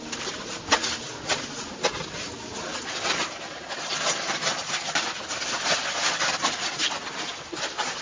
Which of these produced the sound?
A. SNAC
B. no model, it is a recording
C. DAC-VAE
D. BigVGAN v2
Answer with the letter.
B